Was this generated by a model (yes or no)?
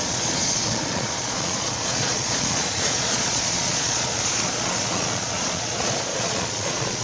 yes